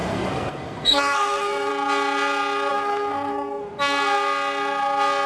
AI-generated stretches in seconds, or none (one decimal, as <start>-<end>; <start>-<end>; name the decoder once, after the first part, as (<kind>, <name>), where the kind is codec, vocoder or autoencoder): 0.0-1.7 (codec, SNAC); 2.7-3.7

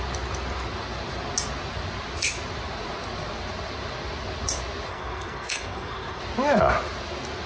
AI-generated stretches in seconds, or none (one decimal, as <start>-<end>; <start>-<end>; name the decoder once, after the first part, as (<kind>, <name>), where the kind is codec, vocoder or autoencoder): 4.9-6.2 (codec, SNAC)